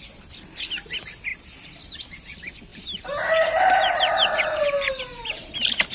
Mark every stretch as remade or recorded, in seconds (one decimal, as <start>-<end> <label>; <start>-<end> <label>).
0.0-2.7 recorded; 2.7-4.9 remade; 4.9-5.9 recorded